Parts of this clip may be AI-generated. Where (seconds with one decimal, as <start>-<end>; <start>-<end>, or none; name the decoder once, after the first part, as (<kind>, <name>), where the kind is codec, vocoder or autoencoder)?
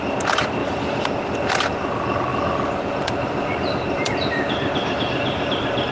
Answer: 0.6-1.2 (vocoder, BigVGAN v2); 2.3-5.9